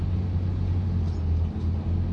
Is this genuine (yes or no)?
yes